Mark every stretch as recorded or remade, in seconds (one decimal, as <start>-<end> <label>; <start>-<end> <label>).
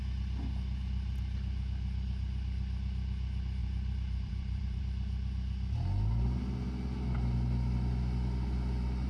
0.0-3.6 recorded; 3.6-4.8 remade; 4.8-9.1 recorded